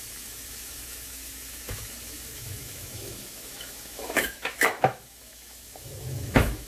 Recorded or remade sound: remade